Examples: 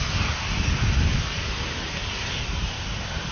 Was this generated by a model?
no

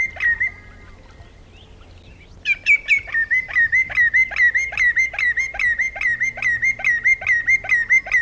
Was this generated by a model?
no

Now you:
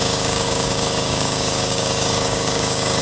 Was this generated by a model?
yes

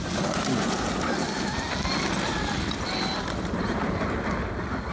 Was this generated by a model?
no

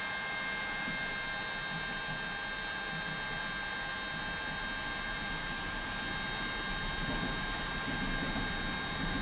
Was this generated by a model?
no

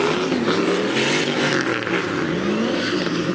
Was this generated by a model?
no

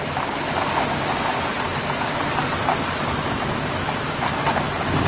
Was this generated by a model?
no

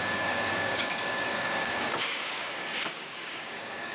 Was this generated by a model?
yes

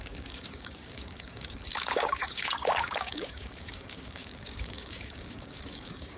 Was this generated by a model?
yes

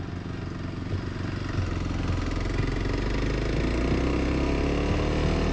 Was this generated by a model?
no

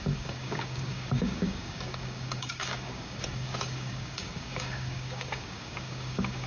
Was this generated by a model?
yes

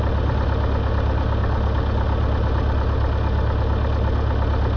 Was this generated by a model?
no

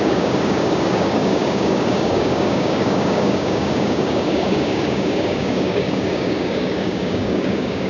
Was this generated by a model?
yes